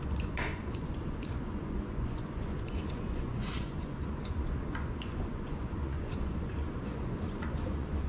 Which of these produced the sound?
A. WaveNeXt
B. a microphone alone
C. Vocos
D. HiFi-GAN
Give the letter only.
C